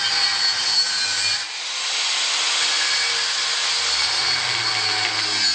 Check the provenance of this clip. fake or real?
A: real